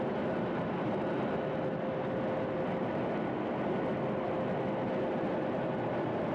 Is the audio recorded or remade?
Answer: recorded